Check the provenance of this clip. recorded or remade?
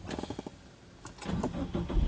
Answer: recorded